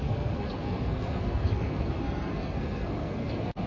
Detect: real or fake fake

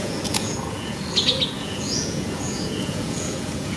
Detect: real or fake fake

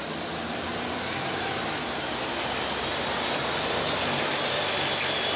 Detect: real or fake real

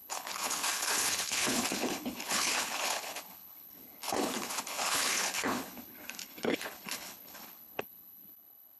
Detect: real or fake fake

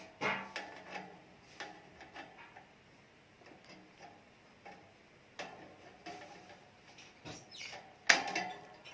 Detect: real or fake real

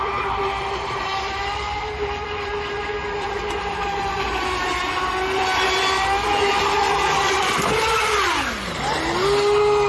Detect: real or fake real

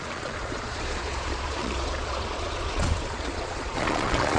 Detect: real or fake fake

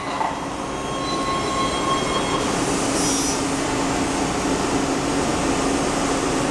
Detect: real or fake real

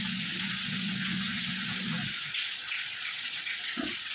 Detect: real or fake fake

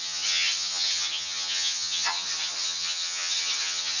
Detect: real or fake fake